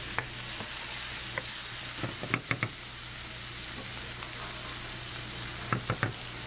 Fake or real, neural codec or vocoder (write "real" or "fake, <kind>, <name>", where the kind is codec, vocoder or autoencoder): real